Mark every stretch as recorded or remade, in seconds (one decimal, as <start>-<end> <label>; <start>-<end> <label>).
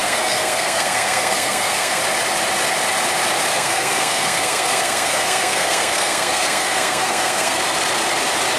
0.0-2.0 remade; 2.0-3.5 recorded; 3.5-7.6 remade; 7.6-8.6 recorded